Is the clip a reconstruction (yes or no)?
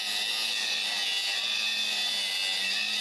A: no